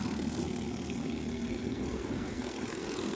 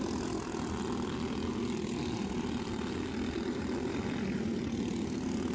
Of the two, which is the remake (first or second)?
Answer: first